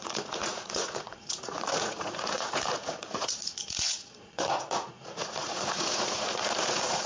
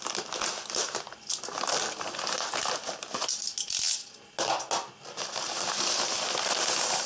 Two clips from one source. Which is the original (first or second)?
second